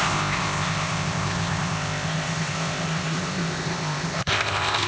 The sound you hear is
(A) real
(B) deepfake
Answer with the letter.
B